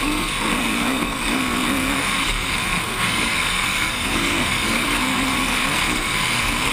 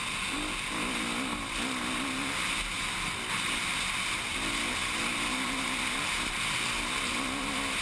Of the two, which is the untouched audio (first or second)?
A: second